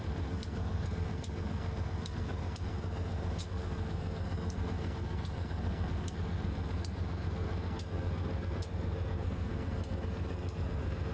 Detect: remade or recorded remade